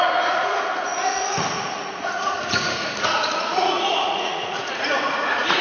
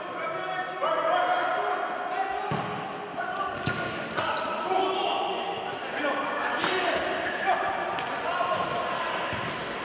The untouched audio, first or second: second